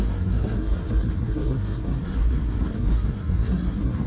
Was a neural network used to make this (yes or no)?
yes